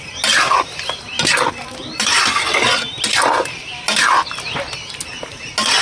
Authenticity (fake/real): real